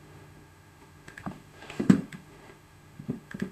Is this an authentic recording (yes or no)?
no